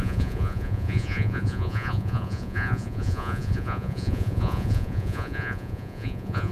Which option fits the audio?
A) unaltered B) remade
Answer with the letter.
B